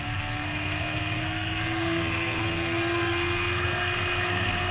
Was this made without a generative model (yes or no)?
no